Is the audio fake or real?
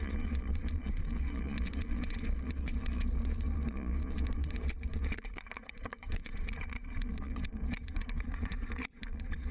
fake